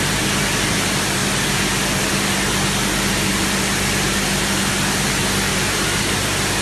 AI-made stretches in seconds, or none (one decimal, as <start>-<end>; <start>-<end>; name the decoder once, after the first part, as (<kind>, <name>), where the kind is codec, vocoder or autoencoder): 5.5-6.0 (vocoder, BigVGAN v2)